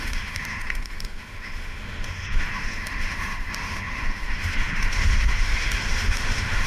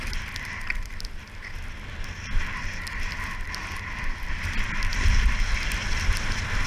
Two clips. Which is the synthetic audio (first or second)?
first